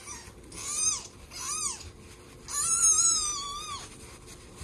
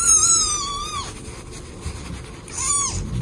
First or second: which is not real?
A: second